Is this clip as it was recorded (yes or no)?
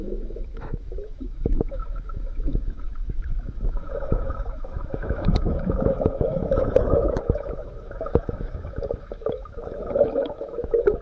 no